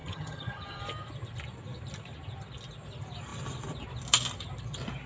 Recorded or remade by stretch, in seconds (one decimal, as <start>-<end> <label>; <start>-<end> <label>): 0.0-0.8 remade; 0.8-5.1 recorded